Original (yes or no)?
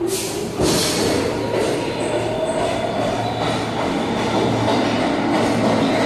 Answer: yes